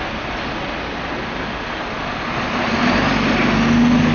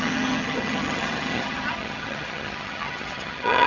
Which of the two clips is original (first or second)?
first